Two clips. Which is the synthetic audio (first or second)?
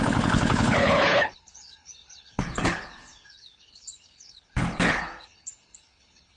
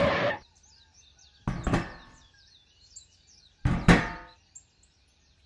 first